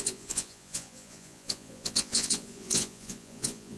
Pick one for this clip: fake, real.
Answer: fake